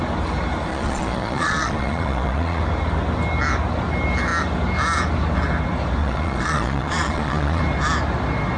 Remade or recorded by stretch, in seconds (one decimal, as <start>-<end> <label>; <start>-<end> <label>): 0.0-0.7 recorded; 0.7-2.6 remade; 2.6-6.0 recorded; 6.0-7.6 remade; 7.6-8.6 recorded